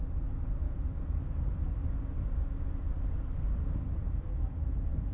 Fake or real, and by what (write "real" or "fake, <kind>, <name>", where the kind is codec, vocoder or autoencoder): real